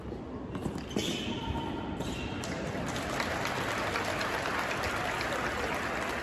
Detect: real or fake real